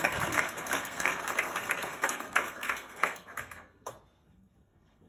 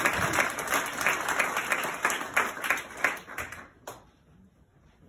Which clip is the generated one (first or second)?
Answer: first